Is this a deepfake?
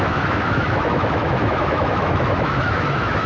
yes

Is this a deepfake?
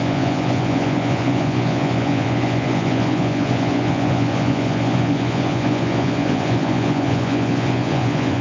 yes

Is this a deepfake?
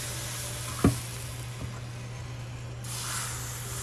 no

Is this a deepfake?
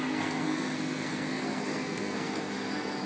yes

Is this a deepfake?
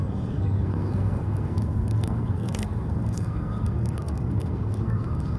yes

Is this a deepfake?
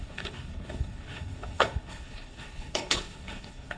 yes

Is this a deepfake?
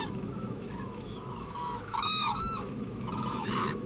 yes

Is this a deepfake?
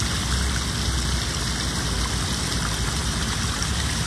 no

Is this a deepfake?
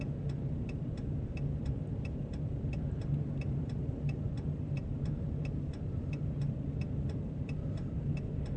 yes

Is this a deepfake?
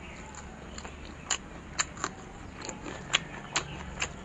no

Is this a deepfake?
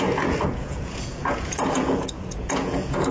yes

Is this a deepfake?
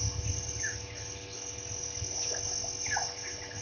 no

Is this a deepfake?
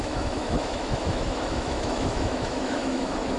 yes